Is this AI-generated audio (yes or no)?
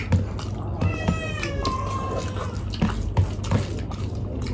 no